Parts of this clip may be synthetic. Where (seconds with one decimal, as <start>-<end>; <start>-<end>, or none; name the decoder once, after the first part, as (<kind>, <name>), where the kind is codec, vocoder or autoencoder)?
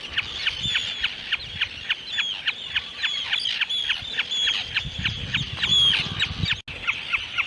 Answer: none